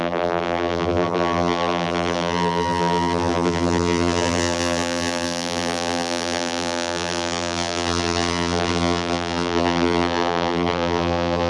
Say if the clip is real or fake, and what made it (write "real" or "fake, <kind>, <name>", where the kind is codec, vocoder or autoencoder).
fake, vocoder, BigVGAN v2